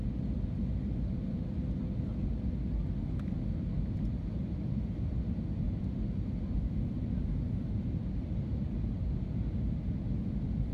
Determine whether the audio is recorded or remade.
recorded